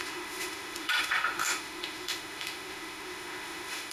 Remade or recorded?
remade